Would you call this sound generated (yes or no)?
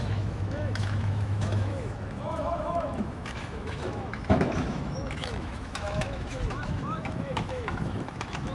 yes